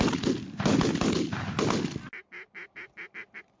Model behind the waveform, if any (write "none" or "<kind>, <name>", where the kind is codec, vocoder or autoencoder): none